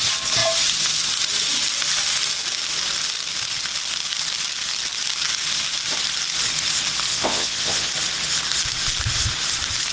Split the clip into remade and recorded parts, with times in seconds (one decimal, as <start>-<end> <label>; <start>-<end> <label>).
0.0-7.1 recorded; 7.1-7.9 remade; 7.9-9.9 recorded